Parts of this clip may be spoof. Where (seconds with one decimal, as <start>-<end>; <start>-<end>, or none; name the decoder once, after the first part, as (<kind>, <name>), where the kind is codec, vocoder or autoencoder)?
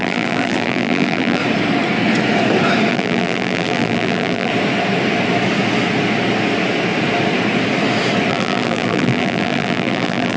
0.0-1.4 (vocoder, BigVGAN v2); 2.9-4.5; 8.3-10.4